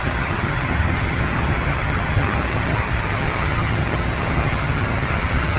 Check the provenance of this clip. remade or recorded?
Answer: remade